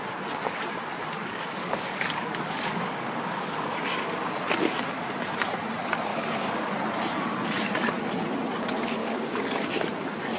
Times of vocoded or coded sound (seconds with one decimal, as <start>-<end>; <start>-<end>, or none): 1.0-4.2; 6.1-6.7; 9.0-9.6